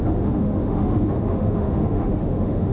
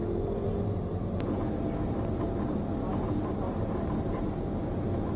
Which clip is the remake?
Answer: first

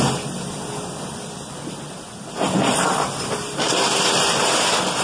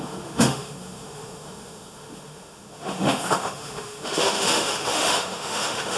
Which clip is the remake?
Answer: second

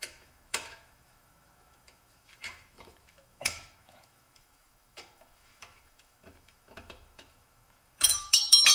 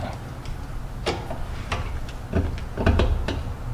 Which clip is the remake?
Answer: first